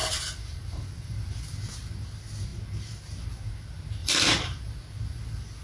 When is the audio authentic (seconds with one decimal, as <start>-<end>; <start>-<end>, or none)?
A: 1.3-4.0; 4.7-5.6